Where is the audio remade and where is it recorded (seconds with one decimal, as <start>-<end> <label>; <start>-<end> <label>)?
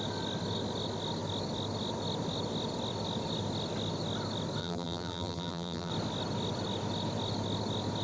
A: 0.0-4.6 recorded; 4.6-5.9 remade; 5.9-8.0 recorded